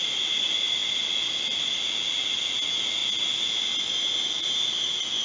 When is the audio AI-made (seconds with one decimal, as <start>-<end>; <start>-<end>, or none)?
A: none